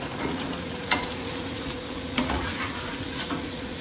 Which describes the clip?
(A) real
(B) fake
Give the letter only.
B